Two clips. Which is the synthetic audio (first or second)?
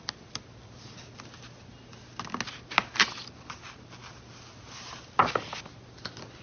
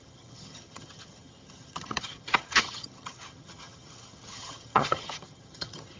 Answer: second